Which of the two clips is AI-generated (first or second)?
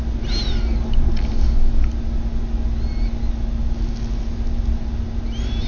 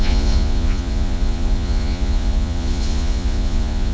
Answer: second